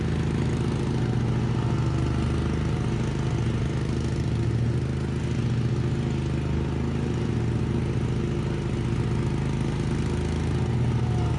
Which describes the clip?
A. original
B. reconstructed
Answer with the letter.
A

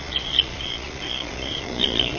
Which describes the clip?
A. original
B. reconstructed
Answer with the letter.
B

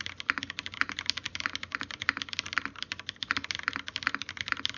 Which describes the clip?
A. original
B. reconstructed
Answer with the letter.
A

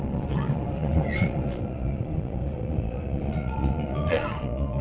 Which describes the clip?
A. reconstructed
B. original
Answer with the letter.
A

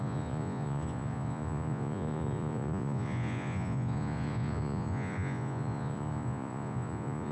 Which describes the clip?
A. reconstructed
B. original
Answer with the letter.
A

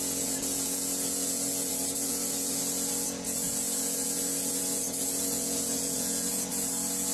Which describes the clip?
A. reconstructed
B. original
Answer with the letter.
A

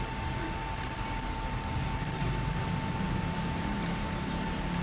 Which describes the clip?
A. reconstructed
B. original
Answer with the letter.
B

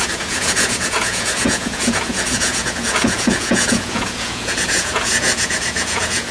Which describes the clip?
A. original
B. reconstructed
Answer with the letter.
B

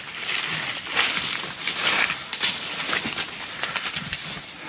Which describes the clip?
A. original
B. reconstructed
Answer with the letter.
A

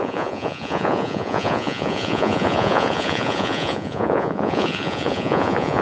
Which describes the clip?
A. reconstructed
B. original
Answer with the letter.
A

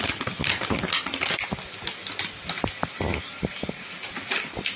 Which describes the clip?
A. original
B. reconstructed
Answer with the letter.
A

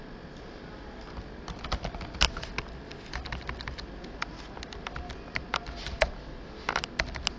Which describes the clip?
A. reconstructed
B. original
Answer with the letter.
B